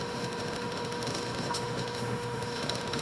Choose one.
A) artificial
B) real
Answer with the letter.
A